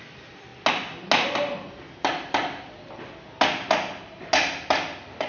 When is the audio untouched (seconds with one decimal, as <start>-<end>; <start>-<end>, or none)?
0.0-5.3